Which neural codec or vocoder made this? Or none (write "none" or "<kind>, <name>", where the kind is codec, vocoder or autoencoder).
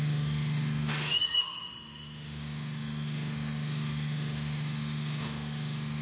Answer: autoencoder, DAC-VAE